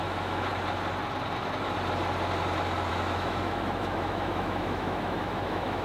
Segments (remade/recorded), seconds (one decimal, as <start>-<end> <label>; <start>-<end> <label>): 0.0-0.5 remade; 0.5-2.9 recorded; 2.9-5.8 remade